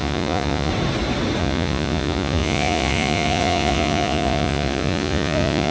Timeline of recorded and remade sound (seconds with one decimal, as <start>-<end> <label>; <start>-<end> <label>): 0.0-0.7 remade; 0.7-1.4 recorded; 1.4-5.7 remade